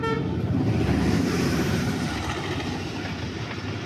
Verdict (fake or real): real